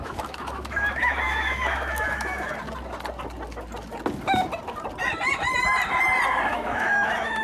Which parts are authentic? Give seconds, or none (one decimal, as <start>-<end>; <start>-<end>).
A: 2.5-6.5